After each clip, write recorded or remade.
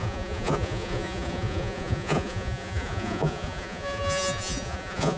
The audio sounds remade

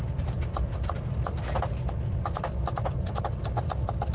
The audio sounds recorded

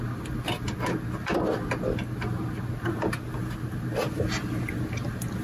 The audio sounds recorded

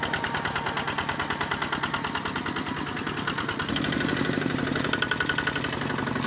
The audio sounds recorded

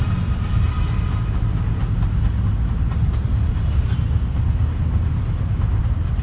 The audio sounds recorded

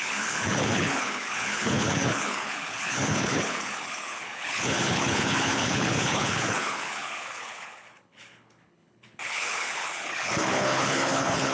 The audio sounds remade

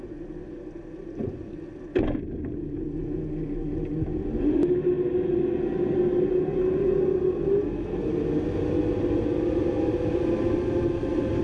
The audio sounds recorded